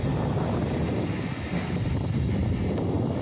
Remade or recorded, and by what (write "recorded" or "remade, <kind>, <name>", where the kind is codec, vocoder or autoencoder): recorded